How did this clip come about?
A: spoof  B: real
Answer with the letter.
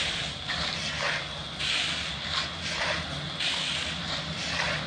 B